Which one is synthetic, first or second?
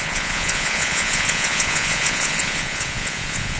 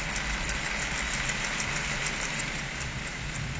first